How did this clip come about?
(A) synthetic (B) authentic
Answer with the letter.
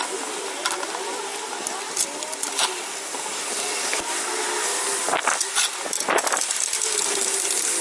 B